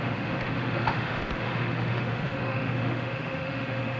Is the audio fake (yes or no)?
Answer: yes